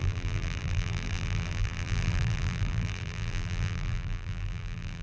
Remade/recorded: remade